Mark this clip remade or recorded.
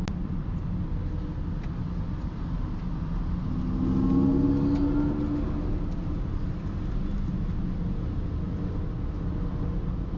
recorded